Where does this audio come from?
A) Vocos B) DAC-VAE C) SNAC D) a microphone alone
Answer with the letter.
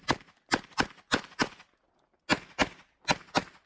D